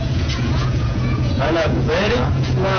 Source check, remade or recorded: remade